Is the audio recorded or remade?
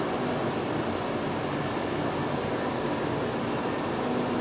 recorded